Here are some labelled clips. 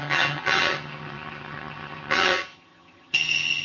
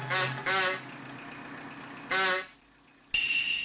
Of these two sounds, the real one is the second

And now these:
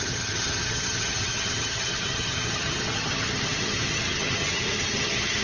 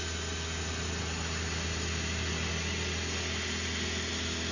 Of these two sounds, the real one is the second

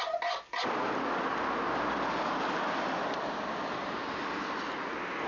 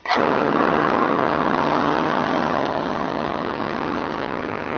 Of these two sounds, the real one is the first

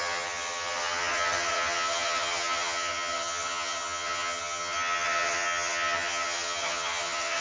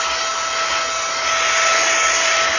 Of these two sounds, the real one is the second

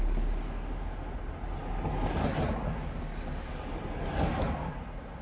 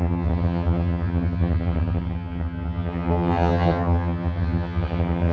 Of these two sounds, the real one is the first